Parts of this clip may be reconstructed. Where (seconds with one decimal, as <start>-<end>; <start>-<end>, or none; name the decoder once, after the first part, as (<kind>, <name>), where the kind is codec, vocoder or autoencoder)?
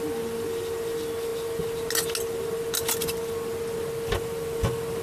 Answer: none